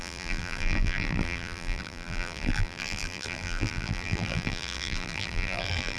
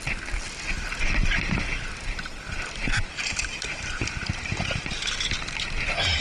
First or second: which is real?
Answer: second